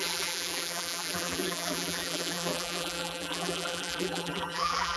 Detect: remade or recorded remade